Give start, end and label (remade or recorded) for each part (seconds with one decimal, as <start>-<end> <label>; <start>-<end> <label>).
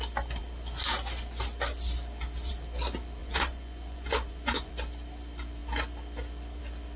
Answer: 0.0-3.2 recorded; 3.2-4.7 remade; 4.7-7.0 recorded